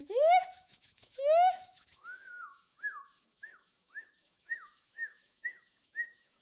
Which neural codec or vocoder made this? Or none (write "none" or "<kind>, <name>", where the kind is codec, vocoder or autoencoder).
autoencoder, DAC-VAE